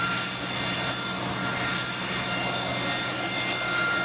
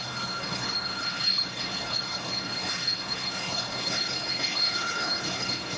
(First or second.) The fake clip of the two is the second